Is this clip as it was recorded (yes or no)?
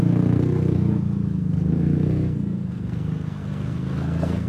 no